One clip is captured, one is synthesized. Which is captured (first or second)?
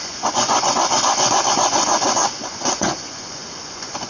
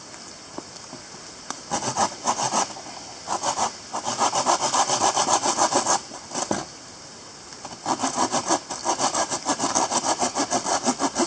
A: second